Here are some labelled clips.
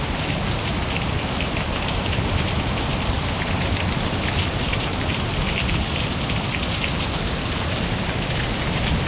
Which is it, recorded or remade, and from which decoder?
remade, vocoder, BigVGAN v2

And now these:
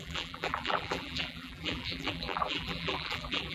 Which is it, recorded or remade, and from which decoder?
remade, vocoder, BigVGAN v2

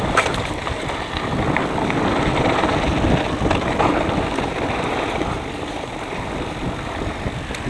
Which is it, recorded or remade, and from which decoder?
recorded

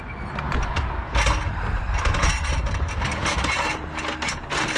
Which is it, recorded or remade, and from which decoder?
recorded